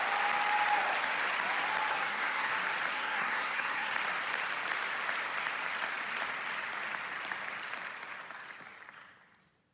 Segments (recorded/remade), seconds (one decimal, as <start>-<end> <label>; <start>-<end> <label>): 0.0-1.9 recorded; 1.9-2.5 remade; 2.5-2.9 recorded; 2.9-3.9 remade; 3.9-9.7 recorded